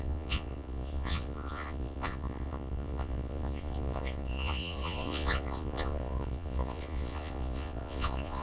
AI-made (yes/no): yes